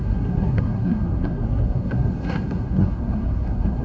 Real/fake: fake